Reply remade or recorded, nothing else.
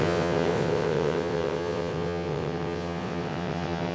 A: remade